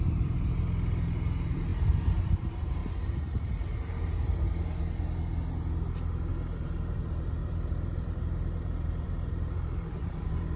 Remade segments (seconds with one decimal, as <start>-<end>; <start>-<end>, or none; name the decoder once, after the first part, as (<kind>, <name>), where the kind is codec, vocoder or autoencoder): 0.0-2.8 (vocoder, BigVGAN v2); 6.3-10.6